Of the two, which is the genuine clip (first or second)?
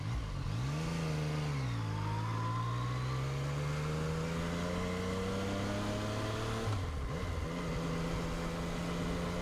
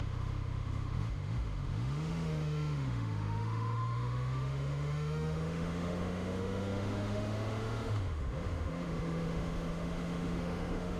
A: first